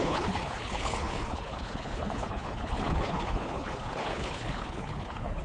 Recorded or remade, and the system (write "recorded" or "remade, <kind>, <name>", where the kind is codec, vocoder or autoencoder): remade, codec, HILCodec